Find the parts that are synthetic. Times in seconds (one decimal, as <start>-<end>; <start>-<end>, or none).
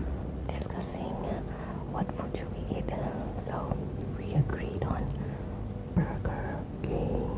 0.0-1.2; 4.5-5.0